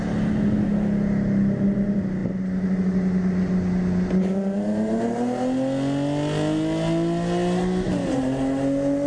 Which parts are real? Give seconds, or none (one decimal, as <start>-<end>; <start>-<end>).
0.0-9.1